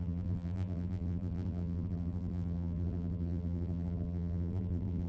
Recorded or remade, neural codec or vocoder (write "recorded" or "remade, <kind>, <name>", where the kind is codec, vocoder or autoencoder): remade, vocoder, BigVGAN v2